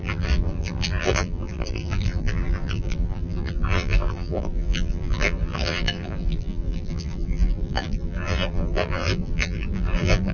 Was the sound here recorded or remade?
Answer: remade